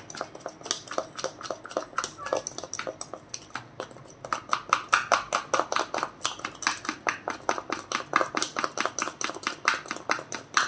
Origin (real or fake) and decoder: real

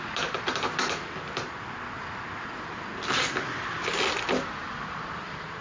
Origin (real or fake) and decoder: real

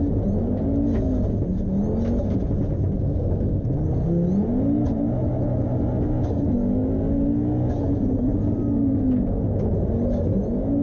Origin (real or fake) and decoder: real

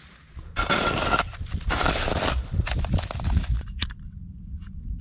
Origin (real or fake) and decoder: real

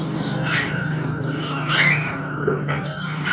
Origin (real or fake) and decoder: fake, codec, DAC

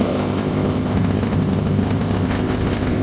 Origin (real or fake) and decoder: fake, codec, ZipCodec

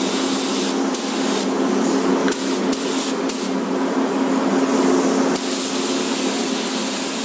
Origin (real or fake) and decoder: real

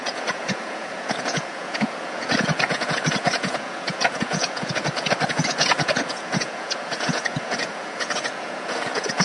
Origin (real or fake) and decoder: fake, vocoder, Vocos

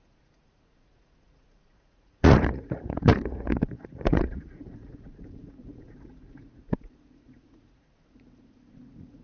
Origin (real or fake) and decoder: fake, vocoder, Vocos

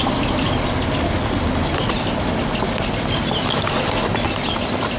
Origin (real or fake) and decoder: real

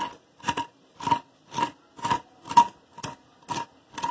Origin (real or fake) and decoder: real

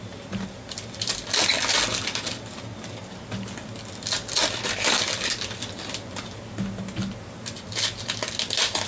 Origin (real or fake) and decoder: real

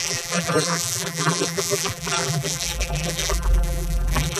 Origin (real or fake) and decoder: fake, vocoder, BigVGAN v2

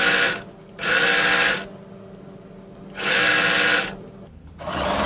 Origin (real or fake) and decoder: real